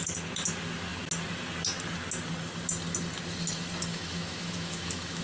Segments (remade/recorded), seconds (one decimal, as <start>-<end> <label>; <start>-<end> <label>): 0.0-3.9 recorded; 3.9-5.2 remade